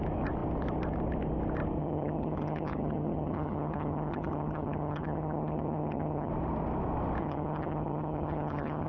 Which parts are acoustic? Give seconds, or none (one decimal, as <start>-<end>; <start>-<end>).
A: 0.0-1.8; 6.3-7.2

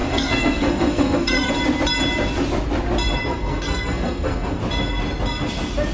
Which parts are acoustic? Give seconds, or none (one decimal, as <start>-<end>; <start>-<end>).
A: 1.5-3.3; 4.6-5.9

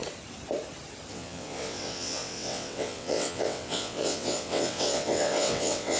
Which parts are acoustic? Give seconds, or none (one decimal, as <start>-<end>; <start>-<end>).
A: 0.0-1.1